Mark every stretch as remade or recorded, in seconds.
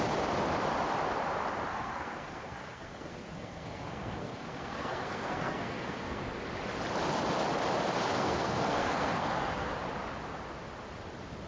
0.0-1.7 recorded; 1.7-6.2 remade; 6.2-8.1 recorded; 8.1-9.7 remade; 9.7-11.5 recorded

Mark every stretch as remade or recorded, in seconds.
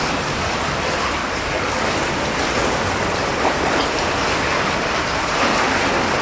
0.0-0.6 remade; 0.6-1.2 recorded; 1.2-1.8 remade; 1.8-6.2 recorded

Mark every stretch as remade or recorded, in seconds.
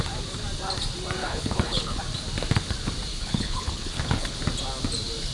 0.0-1.2 recorded; 1.2-2.0 remade; 2.0-3.1 recorded; 3.1-4.4 remade; 4.4-5.3 recorded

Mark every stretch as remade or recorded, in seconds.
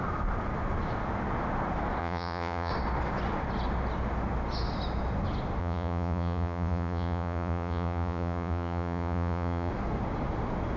0.0-2.0 recorded; 2.0-2.7 remade; 2.7-5.6 recorded; 5.6-9.7 remade; 9.7-10.8 recorded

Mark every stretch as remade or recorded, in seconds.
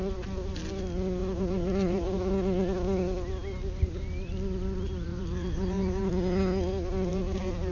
0.0-1.2 recorded; 1.2-2.3 remade; 2.3-5.1 recorded; 5.1-6.1 remade; 6.1-7.1 recorded; 7.1-7.7 remade